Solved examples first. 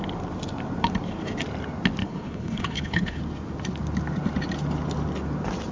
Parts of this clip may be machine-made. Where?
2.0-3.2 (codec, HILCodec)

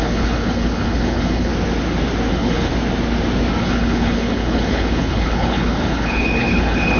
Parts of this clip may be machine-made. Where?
0.0-1.5 (codec, HILCodec); 2.3-2.7; 3.6-7.0

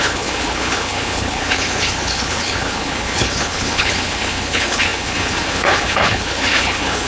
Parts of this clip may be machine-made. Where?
0.0-7.1 (codec, HILCodec)

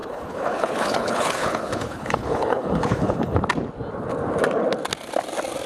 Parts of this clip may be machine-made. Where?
0.0-3.4 (codec, HILCodec)

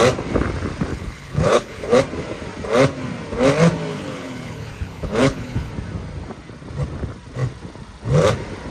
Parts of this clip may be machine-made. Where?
0.9-2.0 (codec, HILCodec); 3.9-5.7